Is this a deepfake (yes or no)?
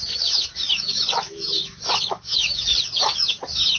yes